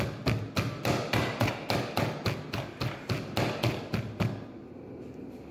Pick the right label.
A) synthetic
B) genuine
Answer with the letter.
B